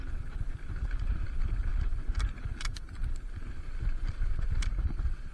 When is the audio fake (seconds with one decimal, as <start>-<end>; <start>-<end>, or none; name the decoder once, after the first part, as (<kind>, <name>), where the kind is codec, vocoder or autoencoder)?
none